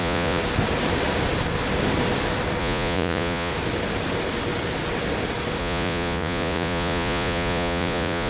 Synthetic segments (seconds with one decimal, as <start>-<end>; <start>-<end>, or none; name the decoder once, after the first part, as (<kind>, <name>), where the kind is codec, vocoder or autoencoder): 0.0-0.4 (vocoder, Vocos); 2.6-3.5; 5.6-8.3